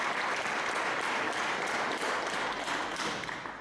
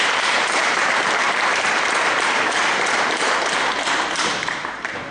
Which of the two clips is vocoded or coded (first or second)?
second